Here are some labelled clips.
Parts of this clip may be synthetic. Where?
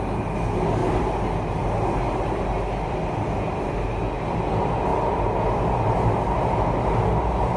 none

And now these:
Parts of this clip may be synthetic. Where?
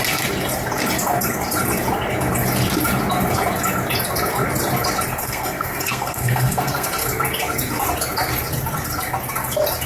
5.2-6.9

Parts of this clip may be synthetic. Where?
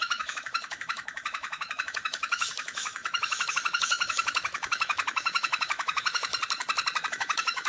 0.0-6.3; 7.1-7.7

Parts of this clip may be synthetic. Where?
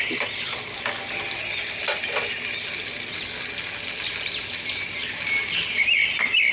none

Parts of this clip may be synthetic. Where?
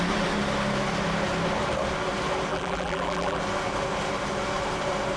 2.5-3.4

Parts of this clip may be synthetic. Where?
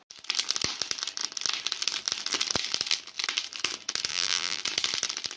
4.1-4.6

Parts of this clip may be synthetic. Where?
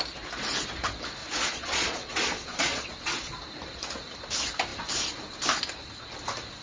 1.2-3.4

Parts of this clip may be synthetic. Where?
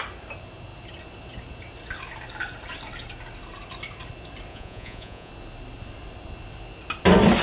4.5-5.3